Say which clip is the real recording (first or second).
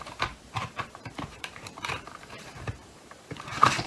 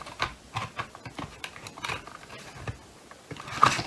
second